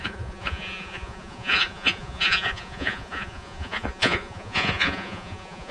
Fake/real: fake